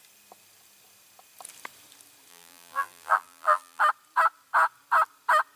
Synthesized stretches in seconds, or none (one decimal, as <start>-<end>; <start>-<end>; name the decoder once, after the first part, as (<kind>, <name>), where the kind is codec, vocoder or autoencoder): 2.3-3.8 (vocoder, BigVGAN v2)